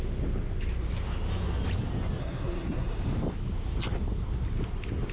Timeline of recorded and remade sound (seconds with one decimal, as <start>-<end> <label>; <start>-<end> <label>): 0.0-2.2 recorded; 2.2-3.0 remade; 3.0-5.1 recorded